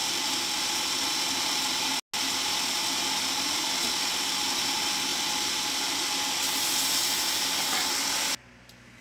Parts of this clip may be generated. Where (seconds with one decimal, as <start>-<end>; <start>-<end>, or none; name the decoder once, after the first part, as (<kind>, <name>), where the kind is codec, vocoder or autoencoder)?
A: none